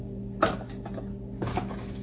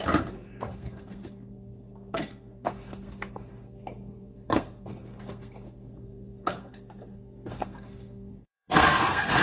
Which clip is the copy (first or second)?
second